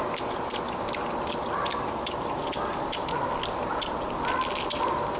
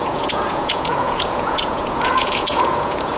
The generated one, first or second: second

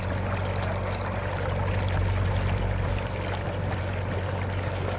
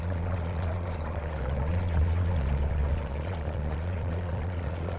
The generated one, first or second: second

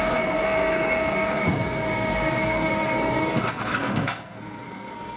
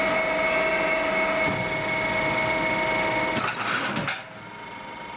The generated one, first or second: first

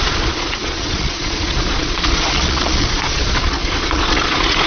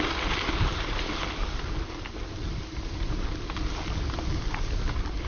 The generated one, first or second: first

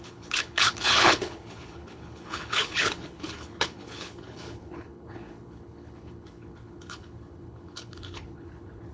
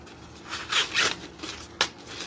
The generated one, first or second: first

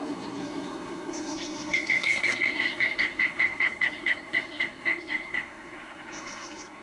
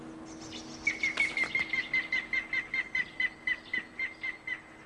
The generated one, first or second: first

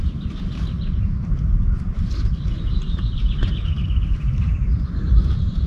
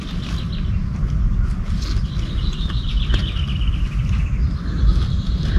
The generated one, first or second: first